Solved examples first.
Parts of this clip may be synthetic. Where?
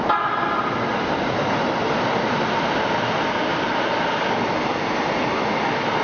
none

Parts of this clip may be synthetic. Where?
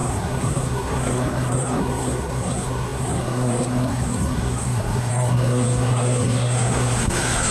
0.0-7.5 (codec, SNAC)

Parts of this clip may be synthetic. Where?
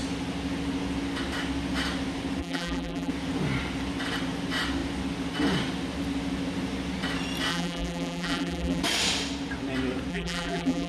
2.4-3.1 (vocoder, BigVGAN v2); 7.5-8.8; 10.1-10.9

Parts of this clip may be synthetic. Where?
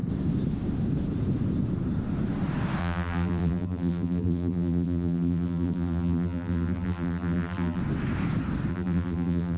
2.8-7.8 (vocoder, BigVGAN v2); 8.7-9.6